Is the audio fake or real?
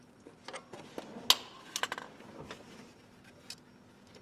real